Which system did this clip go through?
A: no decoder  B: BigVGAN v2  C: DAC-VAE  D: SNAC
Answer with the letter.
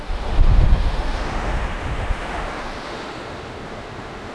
C